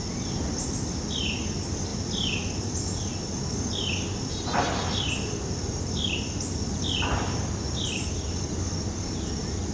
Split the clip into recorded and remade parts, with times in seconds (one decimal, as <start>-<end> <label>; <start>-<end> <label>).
0.0-9.7 recorded